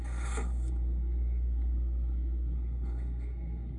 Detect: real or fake fake